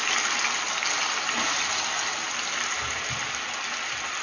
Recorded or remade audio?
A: recorded